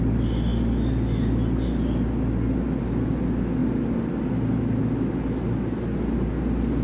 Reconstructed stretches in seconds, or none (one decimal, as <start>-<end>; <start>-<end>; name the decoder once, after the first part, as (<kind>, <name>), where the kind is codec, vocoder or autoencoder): none